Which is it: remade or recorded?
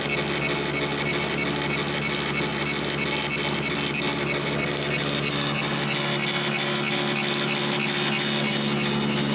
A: recorded